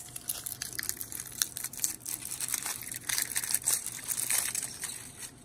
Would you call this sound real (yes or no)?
no